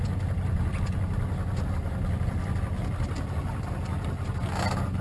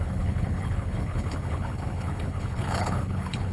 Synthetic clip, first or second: second